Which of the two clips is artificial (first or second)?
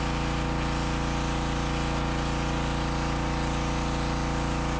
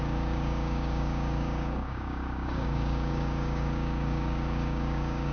second